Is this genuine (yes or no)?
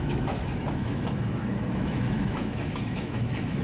no